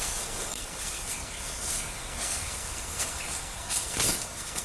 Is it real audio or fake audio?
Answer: fake